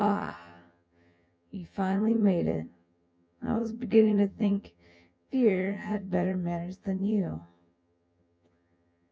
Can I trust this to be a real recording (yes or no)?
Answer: no